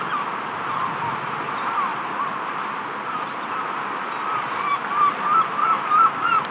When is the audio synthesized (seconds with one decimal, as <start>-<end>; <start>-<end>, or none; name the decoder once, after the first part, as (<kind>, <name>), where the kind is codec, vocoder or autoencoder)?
none